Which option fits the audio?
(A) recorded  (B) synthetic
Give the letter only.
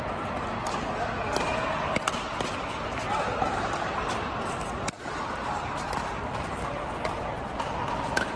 A